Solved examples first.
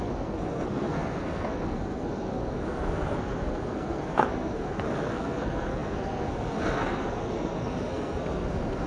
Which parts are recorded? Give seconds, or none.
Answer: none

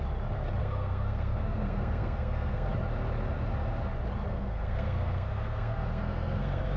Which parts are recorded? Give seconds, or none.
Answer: 0.0-0.6; 2.7-4.3

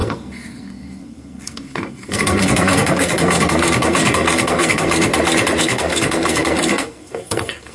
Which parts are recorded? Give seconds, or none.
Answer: 5.1-5.6

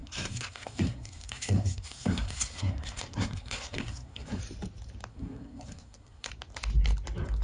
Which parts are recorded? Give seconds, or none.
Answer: 4.4-5.1; 6.3-7.4